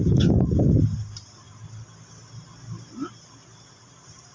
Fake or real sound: real